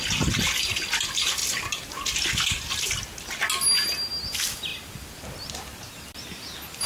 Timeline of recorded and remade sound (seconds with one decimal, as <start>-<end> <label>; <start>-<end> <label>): 0.0-6.9 recorded

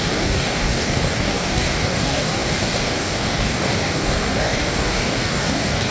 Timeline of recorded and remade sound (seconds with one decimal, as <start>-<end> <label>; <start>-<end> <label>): 0.0-5.9 remade

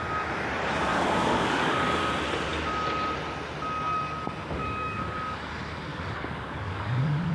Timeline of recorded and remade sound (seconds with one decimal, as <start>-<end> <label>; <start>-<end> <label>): 0.0-0.9 recorded; 0.9-1.9 remade; 1.9-4.6 recorded; 4.6-5.5 remade; 5.5-5.9 recorded; 5.9-7.3 remade